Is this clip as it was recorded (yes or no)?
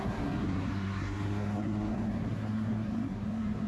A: no